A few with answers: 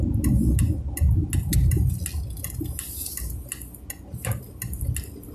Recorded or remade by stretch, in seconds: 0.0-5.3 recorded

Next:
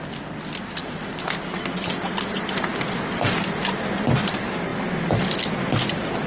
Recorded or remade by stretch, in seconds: 0.0-0.8 remade; 0.8-3.0 recorded; 3.0-4.7 remade; 4.7-5.7 recorded; 5.7-6.3 remade

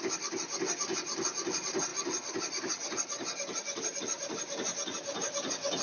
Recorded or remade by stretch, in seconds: 0.0-5.8 recorded